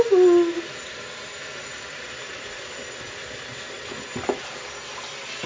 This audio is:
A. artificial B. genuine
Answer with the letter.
B